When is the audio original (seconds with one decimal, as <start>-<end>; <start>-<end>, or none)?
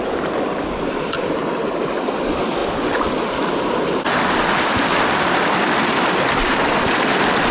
0.0-7.5